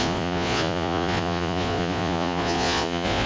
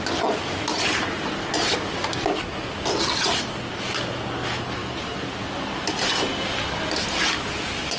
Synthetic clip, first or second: first